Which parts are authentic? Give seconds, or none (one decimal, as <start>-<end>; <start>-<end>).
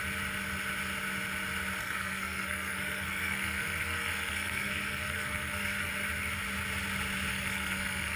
0.0-1.8; 5.9-7.3